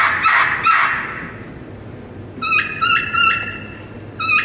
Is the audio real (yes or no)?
yes